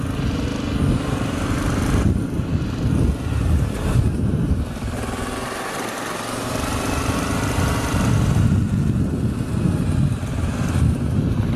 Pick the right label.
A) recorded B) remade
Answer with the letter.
A